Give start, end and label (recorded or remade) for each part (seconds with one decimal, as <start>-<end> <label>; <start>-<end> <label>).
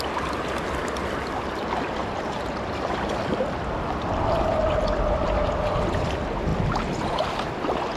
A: 0.0-2.0 recorded; 2.0-4.6 remade; 4.6-8.0 recorded